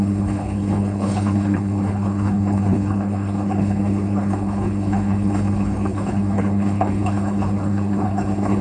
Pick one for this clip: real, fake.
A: fake